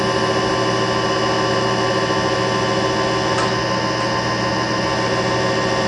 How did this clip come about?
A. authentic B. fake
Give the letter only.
A